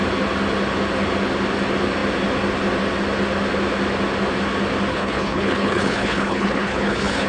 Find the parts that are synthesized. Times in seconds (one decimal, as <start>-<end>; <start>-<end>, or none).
4.9-7.3